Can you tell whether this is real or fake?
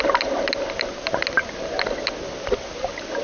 real